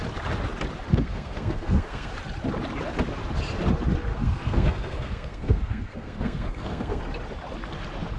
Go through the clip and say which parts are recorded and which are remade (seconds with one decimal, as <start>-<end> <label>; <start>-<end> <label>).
0.0-0.9 recorded; 0.9-2.1 remade; 2.1-4.1 recorded; 4.1-7.0 remade; 7.0-8.2 recorded